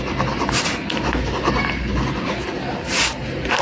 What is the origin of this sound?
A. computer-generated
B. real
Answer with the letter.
B